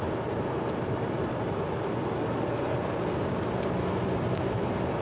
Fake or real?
real